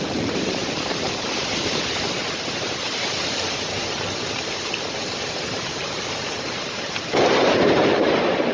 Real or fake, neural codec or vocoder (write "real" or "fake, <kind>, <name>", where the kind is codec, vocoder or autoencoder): fake, vocoder, BigVGAN v2